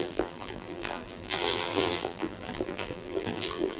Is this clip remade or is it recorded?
remade